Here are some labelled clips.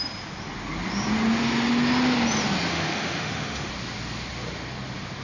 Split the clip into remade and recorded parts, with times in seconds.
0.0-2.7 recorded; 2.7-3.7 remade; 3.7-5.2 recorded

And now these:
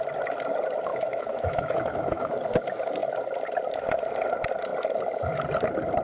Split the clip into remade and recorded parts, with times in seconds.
0.0-0.9 recorded; 0.9-2.3 remade; 2.3-6.0 recorded

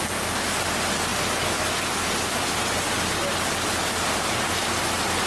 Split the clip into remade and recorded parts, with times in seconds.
0.0-5.3 recorded

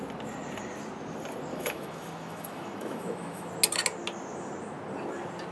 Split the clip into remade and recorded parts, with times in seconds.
0.0-1.5 recorded; 1.5-3.5 remade; 3.5-5.5 recorded

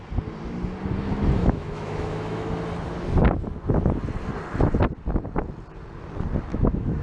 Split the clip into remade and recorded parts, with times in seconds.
0.0-1.4 recorded; 1.4-2.5 remade; 2.5-6.5 recorded; 6.5-7.0 remade

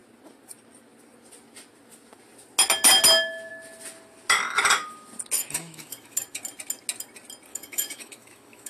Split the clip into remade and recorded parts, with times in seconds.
0.0-5.4 recorded; 5.4-6.4 remade; 6.4-7.5 recorded; 7.5-8.7 remade

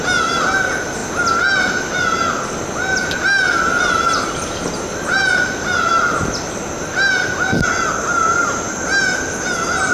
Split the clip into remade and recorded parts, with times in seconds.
0.0-9.9 recorded

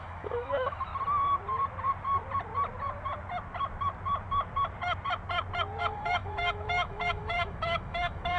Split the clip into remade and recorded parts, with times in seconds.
0.0-0.9 remade; 0.9-5.8 recorded; 5.8-8.4 remade